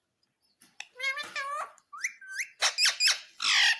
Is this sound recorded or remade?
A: recorded